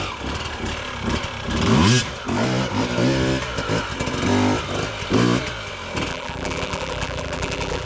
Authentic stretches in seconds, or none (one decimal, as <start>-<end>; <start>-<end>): 0.0-6.1

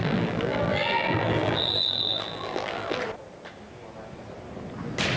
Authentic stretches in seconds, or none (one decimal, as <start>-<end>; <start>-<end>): 3.0-5.2

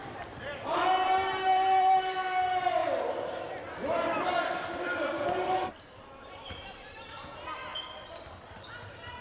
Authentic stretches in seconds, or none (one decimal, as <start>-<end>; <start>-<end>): 2.8-6.0; 7.7-8.7

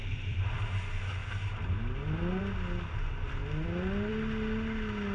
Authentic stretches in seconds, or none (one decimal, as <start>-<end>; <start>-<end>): 0.6-5.1

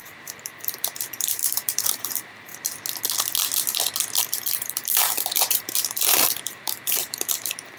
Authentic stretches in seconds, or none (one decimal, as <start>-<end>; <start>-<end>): 2.5-4.2